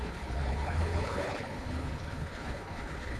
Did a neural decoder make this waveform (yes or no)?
yes